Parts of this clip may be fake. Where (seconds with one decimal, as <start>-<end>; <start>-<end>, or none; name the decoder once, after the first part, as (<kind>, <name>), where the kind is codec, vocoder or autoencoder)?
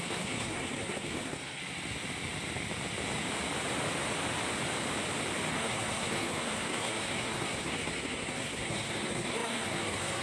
0.0-1.6 (codec, SNAC); 5.5-10.2